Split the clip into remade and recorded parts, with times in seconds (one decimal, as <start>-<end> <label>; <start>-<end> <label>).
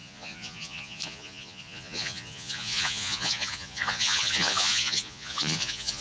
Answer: 0.0-6.0 remade